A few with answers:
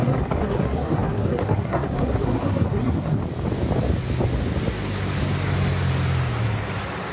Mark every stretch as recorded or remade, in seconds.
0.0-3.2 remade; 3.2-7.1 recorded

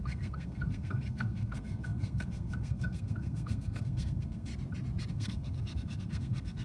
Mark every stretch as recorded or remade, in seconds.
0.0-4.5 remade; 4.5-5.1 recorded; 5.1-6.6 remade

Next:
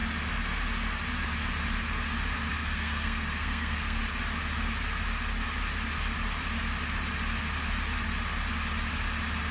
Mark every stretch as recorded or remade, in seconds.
0.0-2.5 recorded; 2.5-4.0 remade; 4.0-9.5 recorded

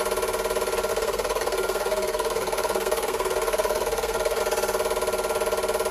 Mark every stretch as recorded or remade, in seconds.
0.0-0.9 recorded; 0.9-4.4 remade; 4.4-5.9 recorded

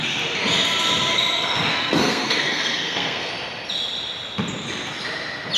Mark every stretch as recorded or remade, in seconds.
0.0-1.7 recorded; 1.7-3.3 remade; 3.3-5.6 recorded